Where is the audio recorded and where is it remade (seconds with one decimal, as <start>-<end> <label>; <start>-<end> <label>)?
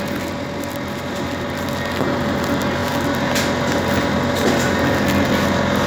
0.0-5.9 recorded